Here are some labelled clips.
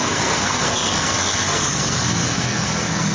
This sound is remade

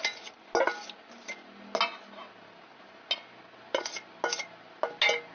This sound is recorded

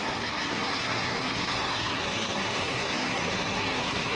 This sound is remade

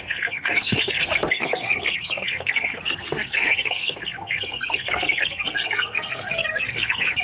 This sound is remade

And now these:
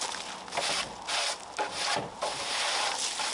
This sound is recorded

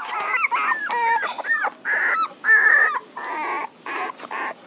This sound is recorded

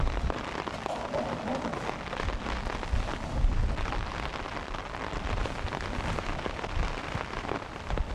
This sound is recorded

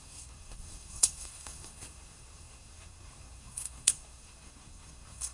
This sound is remade